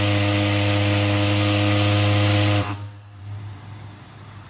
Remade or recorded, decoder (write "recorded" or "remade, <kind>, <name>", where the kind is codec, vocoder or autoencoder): recorded